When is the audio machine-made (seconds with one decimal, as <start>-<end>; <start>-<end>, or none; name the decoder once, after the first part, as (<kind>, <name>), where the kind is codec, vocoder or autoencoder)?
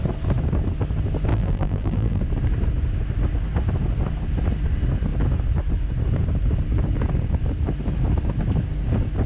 1.3-2.2 (vocoder, BigVGAN v2)